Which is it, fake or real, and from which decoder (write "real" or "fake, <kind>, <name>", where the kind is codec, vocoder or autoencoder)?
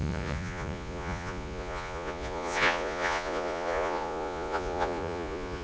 fake, vocoder, Vocos